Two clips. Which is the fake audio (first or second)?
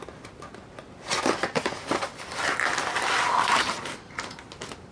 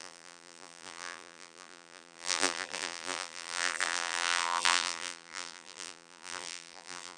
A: second